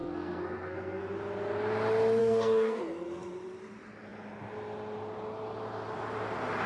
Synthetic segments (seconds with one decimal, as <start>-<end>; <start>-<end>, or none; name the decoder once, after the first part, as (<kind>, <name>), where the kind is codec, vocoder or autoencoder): 0.0-1.0 (codec, SNAC); 2.2-2.8